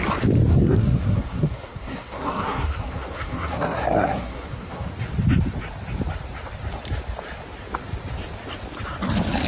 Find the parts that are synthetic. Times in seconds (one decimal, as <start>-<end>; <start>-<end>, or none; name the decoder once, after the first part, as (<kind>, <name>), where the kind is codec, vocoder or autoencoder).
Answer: 0.5-4.9 (codec, SNAC)